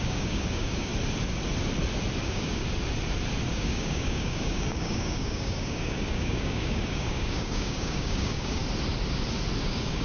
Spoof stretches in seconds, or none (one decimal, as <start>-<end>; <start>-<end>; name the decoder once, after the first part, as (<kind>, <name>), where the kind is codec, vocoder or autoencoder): 0.0-0.9 (codec, DAC); 2.2-2.6; 3.5-8.6; 9.6-10.0